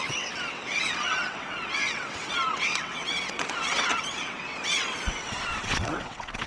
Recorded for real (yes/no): no